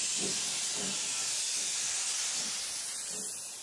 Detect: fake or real real